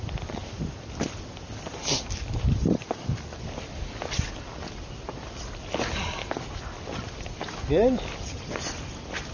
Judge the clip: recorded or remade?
recorded